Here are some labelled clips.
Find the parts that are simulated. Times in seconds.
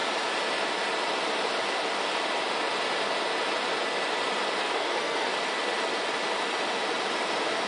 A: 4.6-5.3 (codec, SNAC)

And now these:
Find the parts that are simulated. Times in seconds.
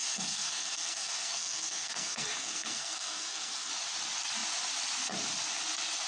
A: 0.0-3.7 (codec, SNAC)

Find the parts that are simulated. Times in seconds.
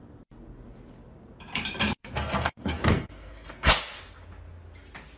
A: 2.0-3.7 (codec, SNAC)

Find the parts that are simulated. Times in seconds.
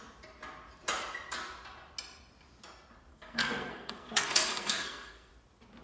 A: 3.1-5.3 (codec, SNAC)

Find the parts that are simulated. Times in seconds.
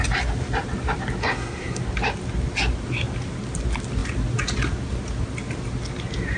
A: 1.2-1.8 (codec, SNAC)